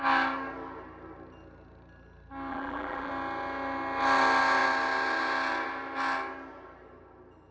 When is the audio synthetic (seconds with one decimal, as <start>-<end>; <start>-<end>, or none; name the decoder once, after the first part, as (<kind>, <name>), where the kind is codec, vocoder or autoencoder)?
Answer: 2.5-3.1 (vocoder, BigVGAN v2)